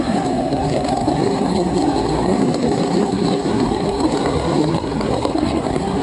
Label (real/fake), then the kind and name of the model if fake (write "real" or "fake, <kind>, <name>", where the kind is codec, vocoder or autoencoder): fake, codec, SNAC